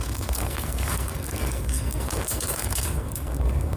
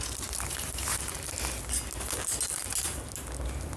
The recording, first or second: second